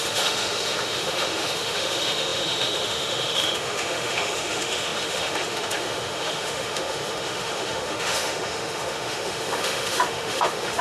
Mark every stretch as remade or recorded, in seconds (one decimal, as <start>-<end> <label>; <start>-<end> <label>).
0.0-10.8 remade

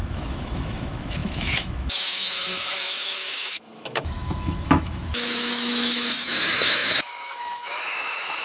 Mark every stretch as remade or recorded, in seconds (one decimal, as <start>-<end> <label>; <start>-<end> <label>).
0.0-8.4 remade